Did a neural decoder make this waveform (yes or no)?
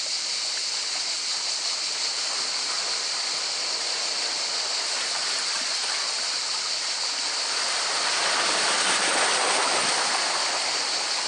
no